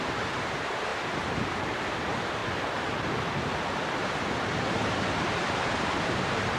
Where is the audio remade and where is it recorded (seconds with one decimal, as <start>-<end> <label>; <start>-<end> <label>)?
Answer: 0.0-2.4 remade; 2.4-3.9 recorded; 3.9-6.6 remade